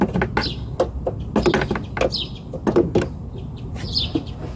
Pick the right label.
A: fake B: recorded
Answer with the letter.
B